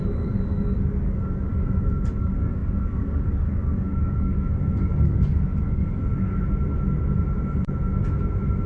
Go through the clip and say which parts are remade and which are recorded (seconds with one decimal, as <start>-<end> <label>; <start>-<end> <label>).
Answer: 0.0-6.0 remade; 6.0-8.7 recorded